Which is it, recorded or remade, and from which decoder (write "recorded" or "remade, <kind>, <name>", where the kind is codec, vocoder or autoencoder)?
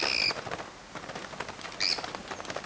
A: recorded